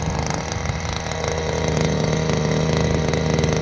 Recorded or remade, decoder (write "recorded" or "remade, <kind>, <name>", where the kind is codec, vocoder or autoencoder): recorded